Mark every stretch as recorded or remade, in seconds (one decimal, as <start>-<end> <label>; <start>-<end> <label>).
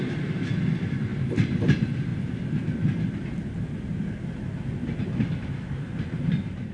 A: 0.0-1.1 recorded; 1.1-1.6 remade; 1.6-6.7 recorded